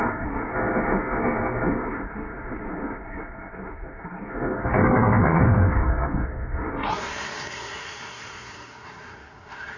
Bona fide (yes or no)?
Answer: no